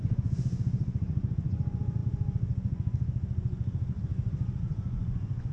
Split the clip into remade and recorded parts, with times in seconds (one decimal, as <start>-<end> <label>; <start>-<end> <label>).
0.0-5.5 remade